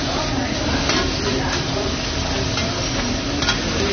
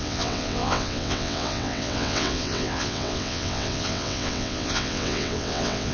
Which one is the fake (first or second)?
second